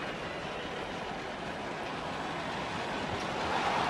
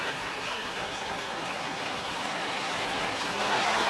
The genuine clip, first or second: first